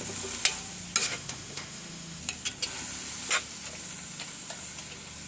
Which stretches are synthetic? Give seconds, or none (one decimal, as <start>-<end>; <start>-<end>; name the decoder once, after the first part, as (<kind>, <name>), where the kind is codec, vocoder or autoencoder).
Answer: 1.0-2.2 (autoencoder, DAC-VAE)

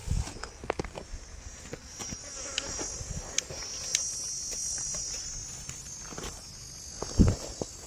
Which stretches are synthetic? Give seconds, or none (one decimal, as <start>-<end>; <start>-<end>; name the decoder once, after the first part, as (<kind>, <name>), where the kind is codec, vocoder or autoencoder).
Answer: none

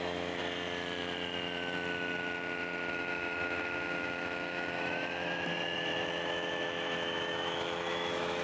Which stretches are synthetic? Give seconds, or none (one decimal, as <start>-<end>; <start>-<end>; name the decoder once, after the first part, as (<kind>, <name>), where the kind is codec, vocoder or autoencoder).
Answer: 0.0-0.4 (autoencoder, DAC-VAE); 2.9-8.4

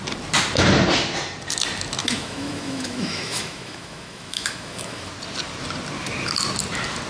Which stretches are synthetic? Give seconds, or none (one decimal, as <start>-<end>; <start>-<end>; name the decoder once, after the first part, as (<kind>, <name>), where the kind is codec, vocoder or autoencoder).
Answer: 2.0-5.1 (autoencoder, DAC-VAE)

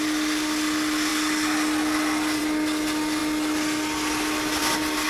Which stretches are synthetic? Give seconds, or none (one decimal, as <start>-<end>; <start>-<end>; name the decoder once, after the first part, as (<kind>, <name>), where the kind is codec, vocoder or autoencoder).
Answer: none

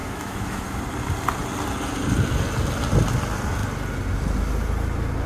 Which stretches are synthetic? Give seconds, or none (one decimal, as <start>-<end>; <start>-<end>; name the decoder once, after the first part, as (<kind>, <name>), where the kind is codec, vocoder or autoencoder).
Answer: 0.0-0.8 (autoencoder, DAC-VAE)